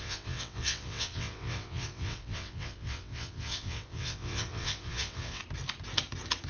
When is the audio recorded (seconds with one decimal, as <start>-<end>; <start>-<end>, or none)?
5.4-6.5